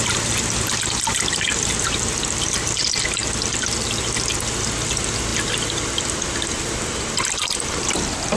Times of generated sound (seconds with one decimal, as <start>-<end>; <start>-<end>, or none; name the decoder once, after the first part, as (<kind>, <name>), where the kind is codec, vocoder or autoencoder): none

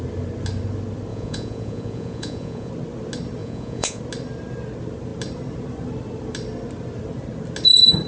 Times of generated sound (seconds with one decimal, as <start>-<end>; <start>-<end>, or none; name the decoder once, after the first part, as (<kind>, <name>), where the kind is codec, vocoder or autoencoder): 1.1-2.7 (vocoder, Vocos); 3.4-4.0

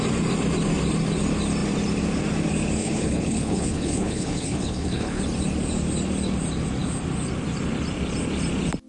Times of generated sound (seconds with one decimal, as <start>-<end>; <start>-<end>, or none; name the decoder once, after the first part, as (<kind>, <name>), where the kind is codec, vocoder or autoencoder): 2.8-5.2 (codec, HILCodec)

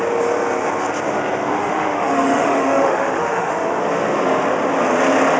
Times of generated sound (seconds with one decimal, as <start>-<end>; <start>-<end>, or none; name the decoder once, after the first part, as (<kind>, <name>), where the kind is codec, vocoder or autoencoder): 1.6-3.8 (autoencoder, DAC-VAE)

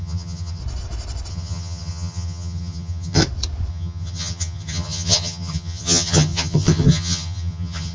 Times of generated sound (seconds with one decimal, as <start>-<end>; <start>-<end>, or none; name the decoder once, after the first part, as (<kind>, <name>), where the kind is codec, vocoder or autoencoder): 0.0-0.6 (vocoder, HiFi-GAN); 1.3-3.2; 3.7-7.9

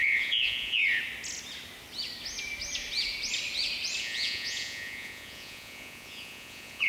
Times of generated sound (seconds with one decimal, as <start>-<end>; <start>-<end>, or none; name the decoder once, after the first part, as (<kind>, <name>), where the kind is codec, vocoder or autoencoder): 0.0-0.8 (vocoder, Vocos); 4.0-6.9

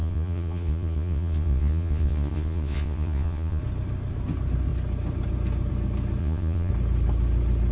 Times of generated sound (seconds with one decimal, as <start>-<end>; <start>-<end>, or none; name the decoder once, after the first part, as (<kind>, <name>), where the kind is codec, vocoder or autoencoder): 0.0-3.6 (vocoder, Vocos); 6.2-6.7

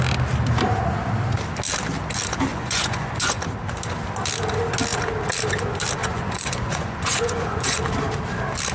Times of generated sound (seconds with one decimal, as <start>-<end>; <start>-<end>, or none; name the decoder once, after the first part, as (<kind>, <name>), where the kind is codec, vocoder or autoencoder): 2.5-3.4 (vocoder, Vocos); 6.0-7.8